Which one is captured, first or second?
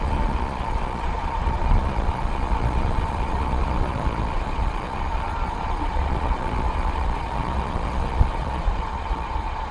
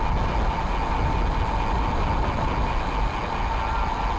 second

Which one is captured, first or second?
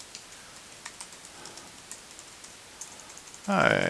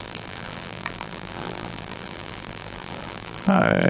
first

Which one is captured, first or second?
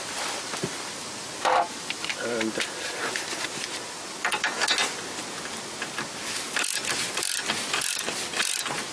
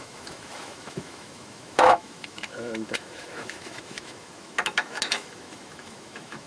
first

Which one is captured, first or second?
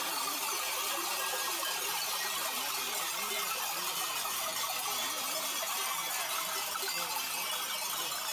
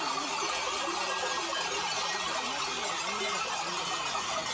second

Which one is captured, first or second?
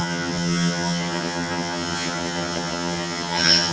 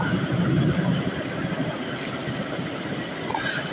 second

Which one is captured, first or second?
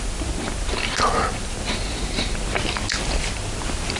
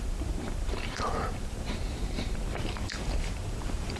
first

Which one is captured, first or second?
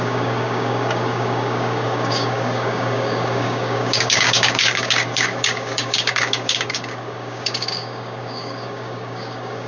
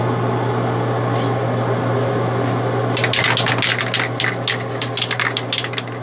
second